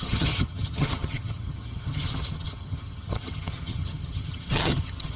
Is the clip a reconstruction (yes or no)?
yes